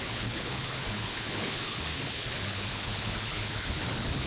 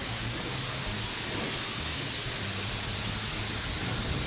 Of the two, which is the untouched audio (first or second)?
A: second